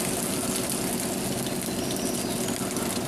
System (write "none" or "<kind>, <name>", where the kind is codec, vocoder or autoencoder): none